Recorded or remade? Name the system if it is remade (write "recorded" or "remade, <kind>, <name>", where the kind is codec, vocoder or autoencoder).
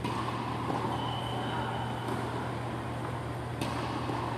recorded